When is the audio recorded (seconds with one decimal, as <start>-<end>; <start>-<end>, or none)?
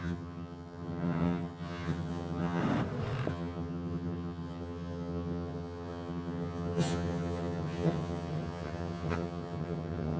2.6-3.3